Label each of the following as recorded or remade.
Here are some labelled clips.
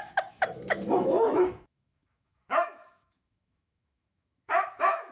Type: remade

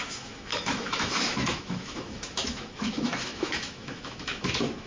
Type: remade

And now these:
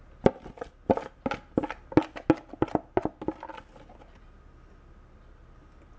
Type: recorded